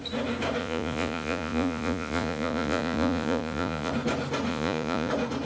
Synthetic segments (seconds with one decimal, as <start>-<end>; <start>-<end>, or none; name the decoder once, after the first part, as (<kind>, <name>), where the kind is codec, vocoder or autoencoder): 0.6-3.9 (vocoder, Vocos); 4.5-5.1